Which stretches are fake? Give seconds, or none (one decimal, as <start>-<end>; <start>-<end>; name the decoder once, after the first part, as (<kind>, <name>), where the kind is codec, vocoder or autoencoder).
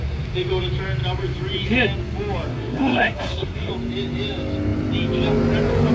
2.5-3.7 (codec, SNAC)